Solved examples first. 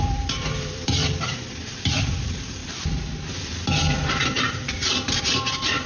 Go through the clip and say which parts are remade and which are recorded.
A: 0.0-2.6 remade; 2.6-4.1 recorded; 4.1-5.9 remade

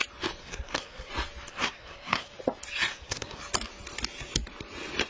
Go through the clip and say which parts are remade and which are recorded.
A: 0.0-0.4 recorded; 0.4-1.1 remade; 1.1-1.5 recorded; 1.5-2.3 remade; 2.3-2.9 recorded; 2.9-3.4 remade; 3.4-5.1 recorded

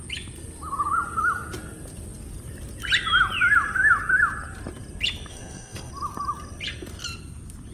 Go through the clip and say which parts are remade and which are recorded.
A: 0.0-5.3 recorded; 5.3-5.9 remade; 5.9-7.7 recorded